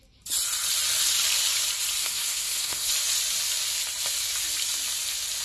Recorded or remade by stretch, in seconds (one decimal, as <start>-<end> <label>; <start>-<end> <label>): 0.0-2.0 recorded; 2.0-2.9 remade; 2.9-5.4 recorded